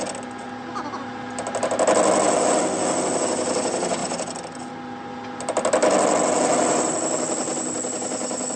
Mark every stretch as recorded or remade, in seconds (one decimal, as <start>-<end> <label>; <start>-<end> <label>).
0.0-8.6 recorded